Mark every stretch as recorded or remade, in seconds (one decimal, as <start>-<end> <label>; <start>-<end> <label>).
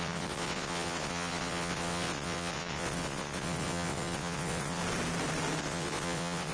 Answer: 0.0-4.8 remade; 4.8-5.6 recorded; 5.6-6.5 remade